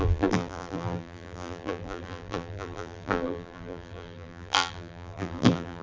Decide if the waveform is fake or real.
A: fake